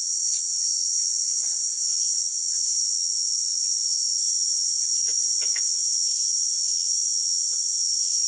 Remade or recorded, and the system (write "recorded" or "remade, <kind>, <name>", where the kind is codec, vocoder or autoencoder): remade, vocoder, WaveNeXt